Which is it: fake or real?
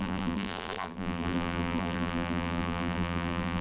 fake